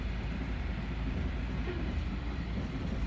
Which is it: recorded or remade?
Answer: remade